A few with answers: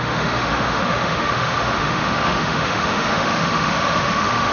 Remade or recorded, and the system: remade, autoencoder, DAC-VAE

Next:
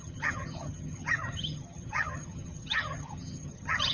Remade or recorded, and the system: remade, vocoder, HiFi-GAN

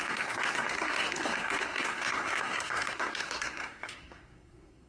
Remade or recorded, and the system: remade, codec, SNAC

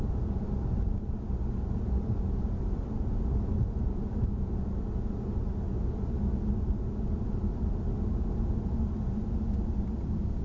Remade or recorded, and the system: recorded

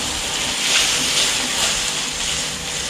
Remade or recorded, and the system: recorded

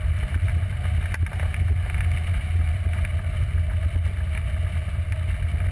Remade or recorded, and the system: recorded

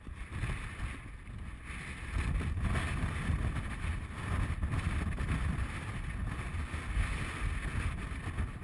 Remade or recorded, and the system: recorded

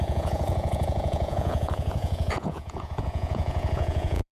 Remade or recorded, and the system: remade, vocoder, Vocos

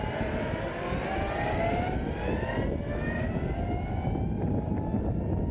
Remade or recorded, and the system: recorded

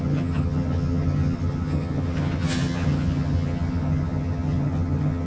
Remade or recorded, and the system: remade, vocoder, HiFi-GAN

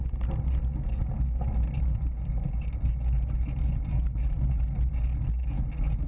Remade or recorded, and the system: recorded